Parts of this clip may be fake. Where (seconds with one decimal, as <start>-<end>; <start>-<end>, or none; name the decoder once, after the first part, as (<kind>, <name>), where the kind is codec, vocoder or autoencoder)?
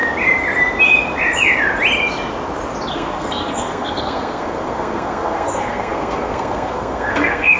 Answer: 2.9-7.6 (codec, SNAC)